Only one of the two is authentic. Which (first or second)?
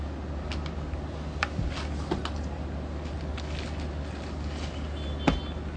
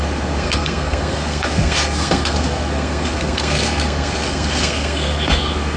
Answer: first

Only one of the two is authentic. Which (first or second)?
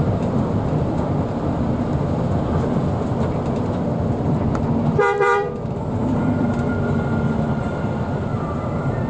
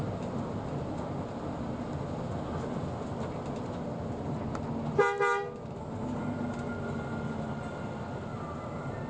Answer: second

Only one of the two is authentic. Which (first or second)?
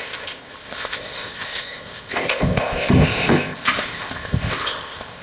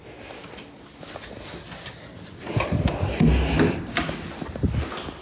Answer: second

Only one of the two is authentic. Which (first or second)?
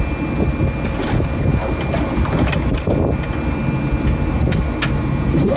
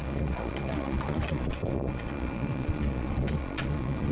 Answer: first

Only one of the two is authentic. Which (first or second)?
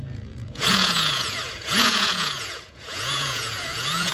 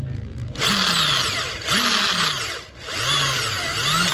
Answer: second